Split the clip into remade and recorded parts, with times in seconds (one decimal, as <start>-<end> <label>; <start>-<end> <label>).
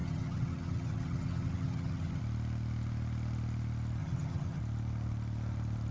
0.0-2.2 remade; 2.2-4.0 recorded; 4.0-4.6 remade; 4.6-5.9 recorded